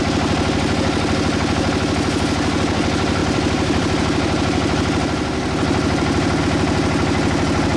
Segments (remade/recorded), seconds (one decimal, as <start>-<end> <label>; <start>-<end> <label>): 0.0-3.2 recorded; 3.2-6.4 remade; 6.4-7.8 recorded